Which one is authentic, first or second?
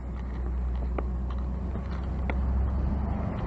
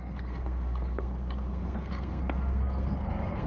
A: first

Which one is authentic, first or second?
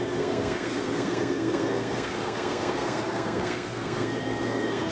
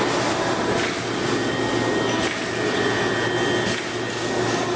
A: second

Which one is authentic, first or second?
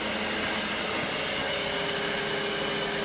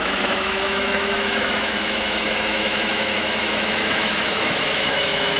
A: first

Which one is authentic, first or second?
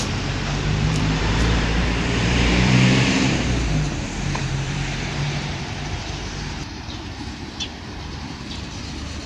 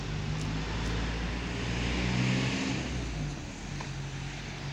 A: second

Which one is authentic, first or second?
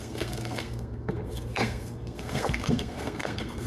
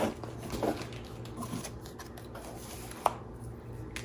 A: second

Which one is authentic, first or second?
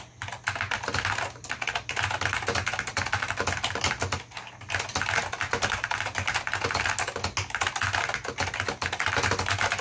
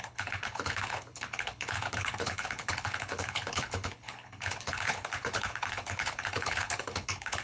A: first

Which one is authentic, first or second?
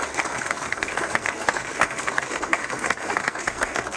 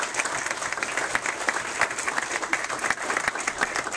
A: second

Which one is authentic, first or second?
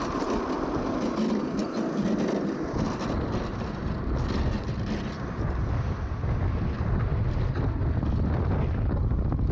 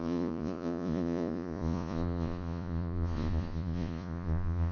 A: first